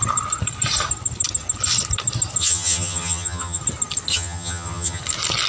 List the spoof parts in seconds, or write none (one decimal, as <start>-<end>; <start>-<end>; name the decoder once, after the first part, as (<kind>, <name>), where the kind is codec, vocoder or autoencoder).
2.4-3.6 (vocoder, HiFi-GAN); 4.1-5.0